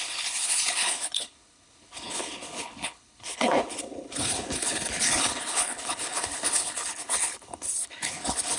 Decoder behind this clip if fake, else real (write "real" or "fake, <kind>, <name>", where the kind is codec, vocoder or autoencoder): fake, codec, HILCodec